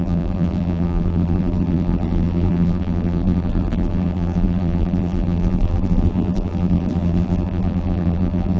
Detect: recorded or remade remade